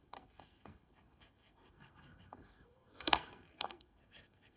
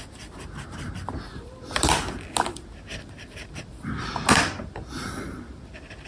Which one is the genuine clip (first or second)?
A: second